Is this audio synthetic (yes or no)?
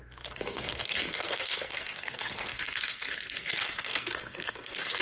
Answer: yes